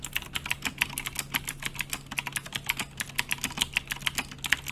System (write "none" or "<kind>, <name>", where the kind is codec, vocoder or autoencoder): none